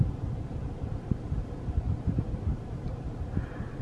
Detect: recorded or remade remade